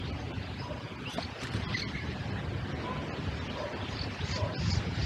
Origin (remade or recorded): recorded